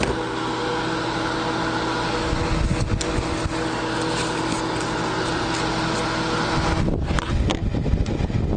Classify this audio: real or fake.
real